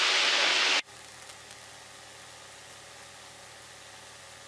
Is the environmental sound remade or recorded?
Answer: recorded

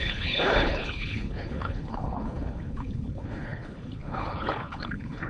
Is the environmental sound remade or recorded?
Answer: remade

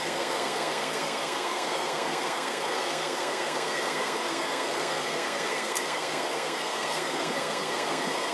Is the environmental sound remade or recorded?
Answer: remade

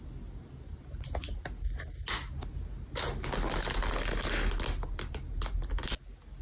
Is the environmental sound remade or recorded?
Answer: recorded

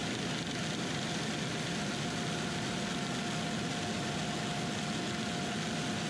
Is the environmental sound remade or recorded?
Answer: recorded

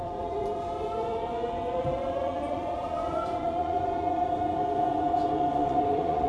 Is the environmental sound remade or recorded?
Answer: remade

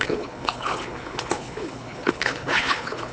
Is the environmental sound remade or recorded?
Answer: remade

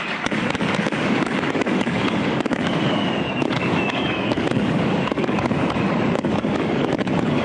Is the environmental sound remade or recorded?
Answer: remade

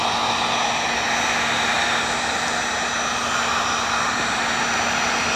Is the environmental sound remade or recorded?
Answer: recorded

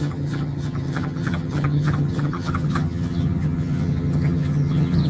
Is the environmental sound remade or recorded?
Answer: remade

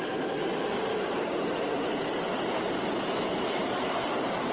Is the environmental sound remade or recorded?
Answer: remade